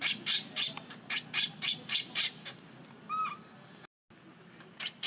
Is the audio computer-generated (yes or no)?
no